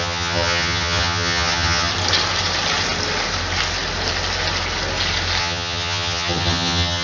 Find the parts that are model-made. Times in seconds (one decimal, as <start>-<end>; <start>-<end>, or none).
0.0-1.9; 5.4-7.0